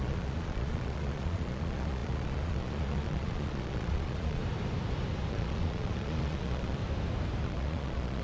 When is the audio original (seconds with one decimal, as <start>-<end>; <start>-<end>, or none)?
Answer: 4.4-5.3; 6.8-7.4